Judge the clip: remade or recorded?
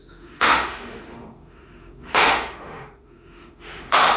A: remade